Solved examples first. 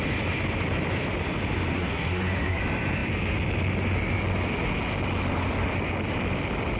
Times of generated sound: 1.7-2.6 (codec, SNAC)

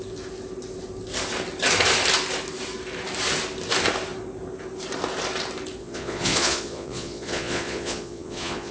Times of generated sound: 5.8-8.7 (vocoder, Vocos)

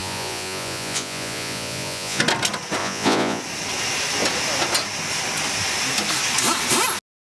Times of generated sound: 0.0-2.2 (vocoder, Vocos); 2.8-3.4